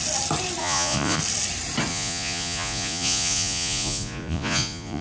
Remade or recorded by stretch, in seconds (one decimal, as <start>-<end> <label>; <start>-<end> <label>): 0.0-0.6 recorded; 0.6-1.2 remade; 1.2-1.9 recorded; 1.9-5.0 remade